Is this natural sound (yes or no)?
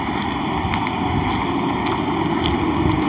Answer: yes